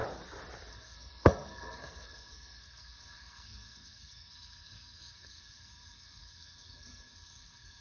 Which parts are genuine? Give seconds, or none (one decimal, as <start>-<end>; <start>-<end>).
0.0-0.7